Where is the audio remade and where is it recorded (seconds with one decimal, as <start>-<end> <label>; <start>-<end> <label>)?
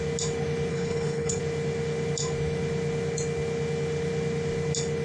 0.0-0.7 recorded; 0.7-1.4 remade; 1.4-5.0 recorded